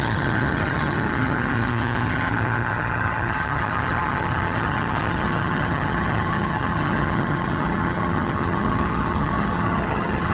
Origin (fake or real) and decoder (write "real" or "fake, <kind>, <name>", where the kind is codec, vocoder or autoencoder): fake, vocoder, HiFi-GAN